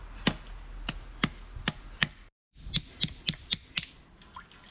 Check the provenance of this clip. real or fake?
real